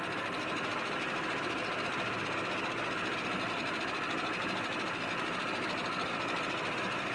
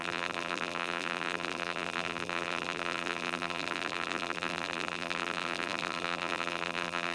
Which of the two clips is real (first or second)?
first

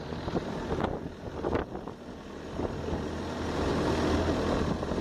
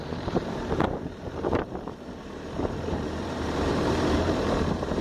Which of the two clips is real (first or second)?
first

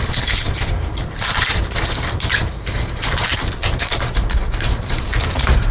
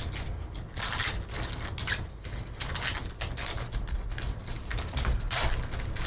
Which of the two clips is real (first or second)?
second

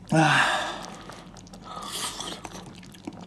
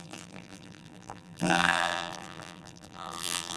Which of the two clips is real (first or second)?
first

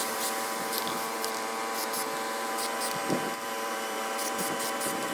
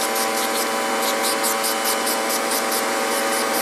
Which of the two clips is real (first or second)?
second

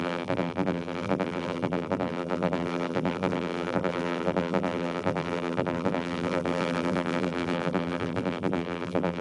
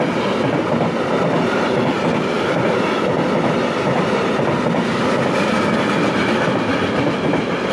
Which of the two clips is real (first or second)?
second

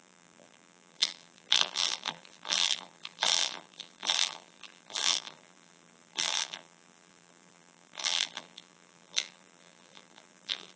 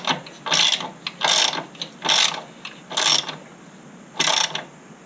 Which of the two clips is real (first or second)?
second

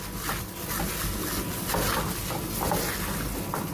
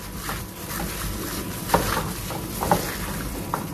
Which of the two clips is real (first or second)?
first